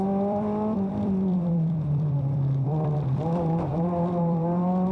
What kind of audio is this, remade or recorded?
remade